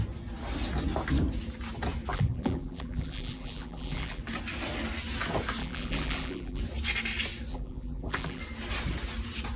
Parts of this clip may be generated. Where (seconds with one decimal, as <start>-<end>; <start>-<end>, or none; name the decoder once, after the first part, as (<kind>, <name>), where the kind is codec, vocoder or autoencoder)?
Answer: 2.1-4.2 (vocoder, BigVGAN v2); 5.6-6.6; 7.5-8.4